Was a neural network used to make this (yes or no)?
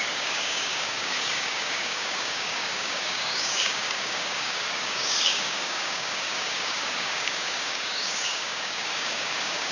yes